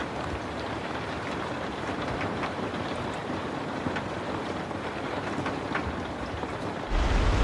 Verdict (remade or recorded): remade